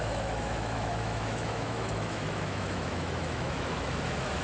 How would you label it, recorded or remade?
remade